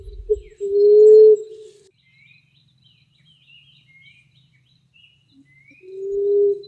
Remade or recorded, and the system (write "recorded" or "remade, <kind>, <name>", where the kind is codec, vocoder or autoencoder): recorded